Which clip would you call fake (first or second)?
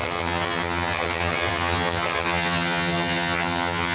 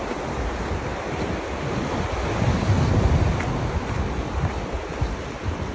first